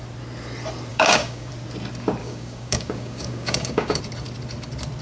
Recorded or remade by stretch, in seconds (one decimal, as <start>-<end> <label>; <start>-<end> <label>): 0.0-0.9 recorded; 0.9-1.5 remade; 1.5-2.2 recorded; 2.2-4.0 remade; 4.0-5.0 recorded